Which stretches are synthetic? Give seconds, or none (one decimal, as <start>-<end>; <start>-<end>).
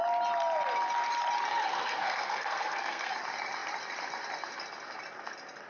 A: 1.5-3.1